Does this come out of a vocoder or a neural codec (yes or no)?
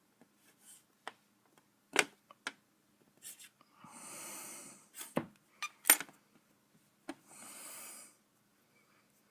no